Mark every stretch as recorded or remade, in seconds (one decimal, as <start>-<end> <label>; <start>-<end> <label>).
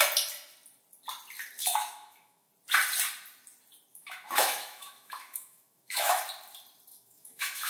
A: 0.0-1.6 recorded; 1.6-2.5 remade; 2.5-3.9 recorded; 3.9-6.2 remade; 6.2-6.9 recorded; 6.9-7.7 remade